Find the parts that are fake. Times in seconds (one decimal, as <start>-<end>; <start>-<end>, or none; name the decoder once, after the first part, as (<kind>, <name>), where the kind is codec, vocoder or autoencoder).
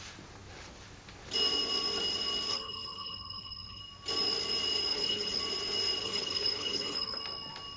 2.5-3.8 (codec, HILCodec); 4.9-5.4; 6.0-7.2